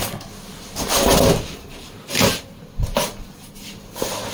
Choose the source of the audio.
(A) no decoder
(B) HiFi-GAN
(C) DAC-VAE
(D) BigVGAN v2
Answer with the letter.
A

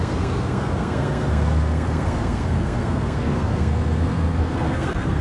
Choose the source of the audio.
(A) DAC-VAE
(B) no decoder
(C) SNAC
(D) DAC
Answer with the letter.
C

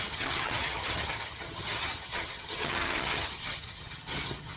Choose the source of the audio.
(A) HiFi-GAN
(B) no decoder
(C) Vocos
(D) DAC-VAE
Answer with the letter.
A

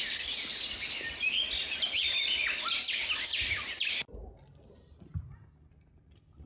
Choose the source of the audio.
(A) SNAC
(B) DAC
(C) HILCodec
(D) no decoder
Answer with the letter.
D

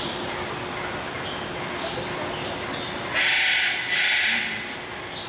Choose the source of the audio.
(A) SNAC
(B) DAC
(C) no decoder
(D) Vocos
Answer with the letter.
C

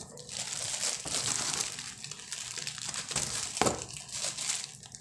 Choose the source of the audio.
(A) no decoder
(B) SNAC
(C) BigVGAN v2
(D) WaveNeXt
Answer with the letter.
A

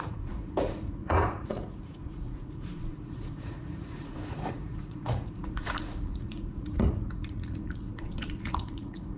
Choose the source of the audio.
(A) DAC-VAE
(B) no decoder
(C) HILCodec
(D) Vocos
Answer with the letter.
D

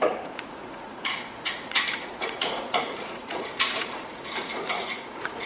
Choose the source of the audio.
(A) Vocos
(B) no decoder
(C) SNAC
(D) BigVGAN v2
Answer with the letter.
A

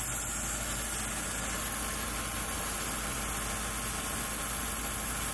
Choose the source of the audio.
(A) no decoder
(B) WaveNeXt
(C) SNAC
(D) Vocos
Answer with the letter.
A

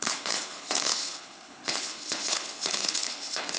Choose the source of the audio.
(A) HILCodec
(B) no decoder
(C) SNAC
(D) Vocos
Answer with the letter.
A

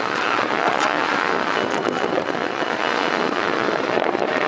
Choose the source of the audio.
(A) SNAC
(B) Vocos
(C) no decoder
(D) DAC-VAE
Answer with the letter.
B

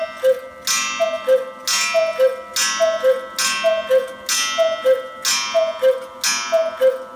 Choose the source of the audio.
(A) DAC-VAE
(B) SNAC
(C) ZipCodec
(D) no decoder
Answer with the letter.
D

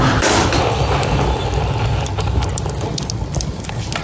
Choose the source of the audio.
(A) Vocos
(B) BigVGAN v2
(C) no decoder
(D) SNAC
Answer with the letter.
C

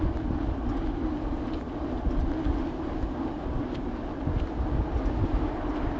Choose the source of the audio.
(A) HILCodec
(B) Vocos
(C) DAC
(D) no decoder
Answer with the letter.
D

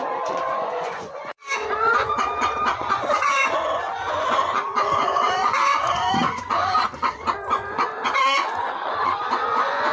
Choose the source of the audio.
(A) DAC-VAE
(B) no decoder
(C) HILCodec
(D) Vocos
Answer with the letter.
D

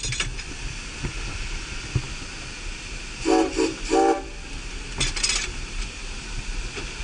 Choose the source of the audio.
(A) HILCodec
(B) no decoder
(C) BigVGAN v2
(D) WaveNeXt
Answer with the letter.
B